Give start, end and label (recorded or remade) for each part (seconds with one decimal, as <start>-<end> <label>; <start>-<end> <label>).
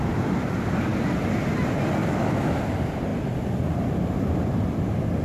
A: 0.0-2.0 recorded; 2.0-2.6 remade; 2.6-5.2 recorded